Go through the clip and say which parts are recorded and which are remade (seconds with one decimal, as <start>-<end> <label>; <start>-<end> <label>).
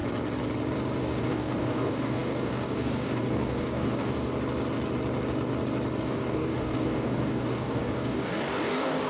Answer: 0.0-1.0 recorded; 1.0-4.3 remade; 4.3-6.0 recorded; 6.0-9.1 remade